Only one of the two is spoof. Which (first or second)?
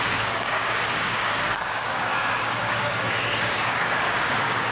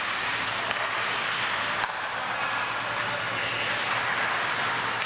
first